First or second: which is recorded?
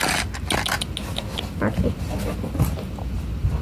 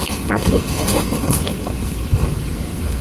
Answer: first